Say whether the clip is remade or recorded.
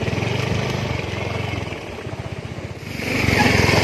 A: recorded